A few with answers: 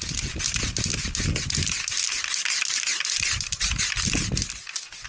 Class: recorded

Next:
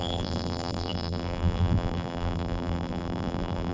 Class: remade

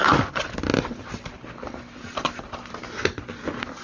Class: recorded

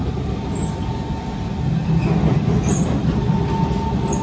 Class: recorded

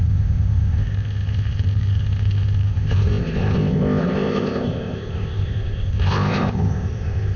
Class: remade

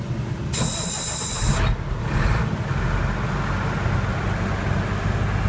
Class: recorded